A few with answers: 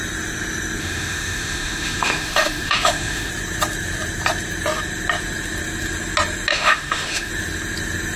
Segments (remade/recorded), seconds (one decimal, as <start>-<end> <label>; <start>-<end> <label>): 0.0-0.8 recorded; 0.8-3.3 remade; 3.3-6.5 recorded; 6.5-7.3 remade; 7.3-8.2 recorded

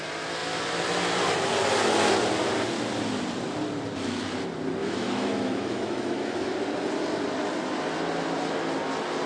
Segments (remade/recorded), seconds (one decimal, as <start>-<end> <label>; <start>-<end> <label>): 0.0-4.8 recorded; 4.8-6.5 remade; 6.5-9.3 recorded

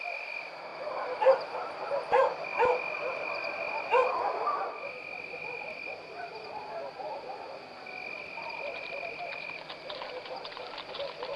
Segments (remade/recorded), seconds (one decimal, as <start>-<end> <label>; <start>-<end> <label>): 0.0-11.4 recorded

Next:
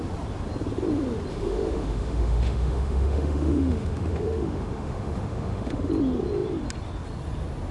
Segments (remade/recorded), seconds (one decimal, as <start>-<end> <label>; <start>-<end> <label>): 0.0-1.3 recorded; 1.3-5.9 remade; 5.9-7.7 recorded